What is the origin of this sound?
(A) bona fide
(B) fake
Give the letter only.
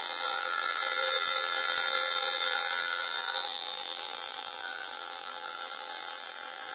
B